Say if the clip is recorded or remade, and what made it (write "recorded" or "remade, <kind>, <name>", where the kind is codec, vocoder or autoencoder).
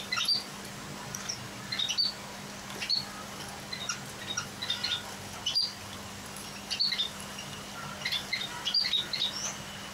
recorded